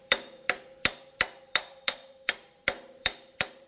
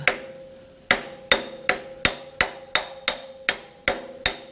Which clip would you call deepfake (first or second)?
first